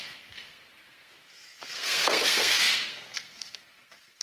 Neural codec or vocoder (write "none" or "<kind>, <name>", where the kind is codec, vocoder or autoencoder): codec, SNAC